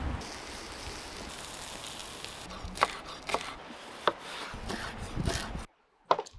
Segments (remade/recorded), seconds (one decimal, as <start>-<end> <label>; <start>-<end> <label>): 0.0-6.4 recorded